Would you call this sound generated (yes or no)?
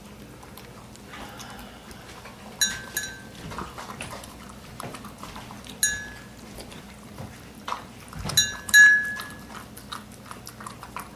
no